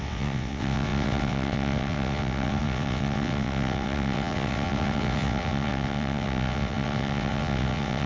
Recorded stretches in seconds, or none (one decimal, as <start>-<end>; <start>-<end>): none